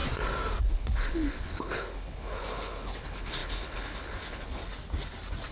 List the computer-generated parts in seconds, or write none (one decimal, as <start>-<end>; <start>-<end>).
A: 0.6-4.6